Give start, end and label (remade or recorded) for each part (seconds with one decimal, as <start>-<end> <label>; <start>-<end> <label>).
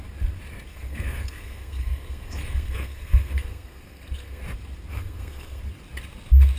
0.0-0.7 recorded; 0.7-4.4 remade; 4.4-4.9 recorded; 4.9-5.6 remade; 5.6-6.6 recorded